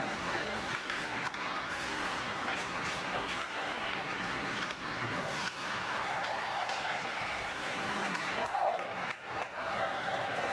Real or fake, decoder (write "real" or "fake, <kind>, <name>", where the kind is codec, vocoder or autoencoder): fake, codec, SNAC